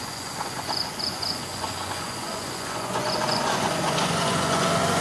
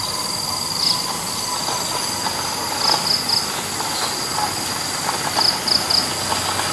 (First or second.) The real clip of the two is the second